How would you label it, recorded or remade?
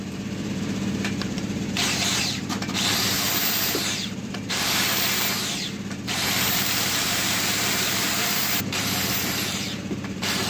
remade